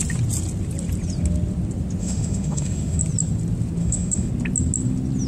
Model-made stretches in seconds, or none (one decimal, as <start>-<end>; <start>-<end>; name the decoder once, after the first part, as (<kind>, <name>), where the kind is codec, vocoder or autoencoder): 2.0-3.0 (autoencoder, DAC-VAE); 3.8-4.3